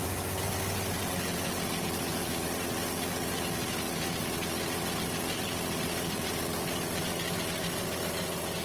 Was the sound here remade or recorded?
recorded